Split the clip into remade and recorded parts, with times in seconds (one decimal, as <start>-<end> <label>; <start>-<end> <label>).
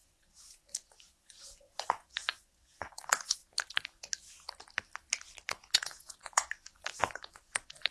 0.0-3.4 remade; 3.4-5.5 recorded; 5.5-7.9 remade